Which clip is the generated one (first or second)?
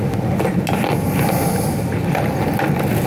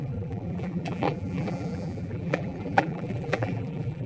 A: second